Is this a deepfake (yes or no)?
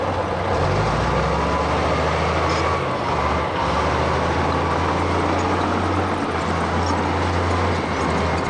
no